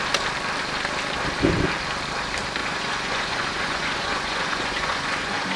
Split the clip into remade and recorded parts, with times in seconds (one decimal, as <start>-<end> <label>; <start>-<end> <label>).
0.0-2.6 recorded; 2.6-5.6 remade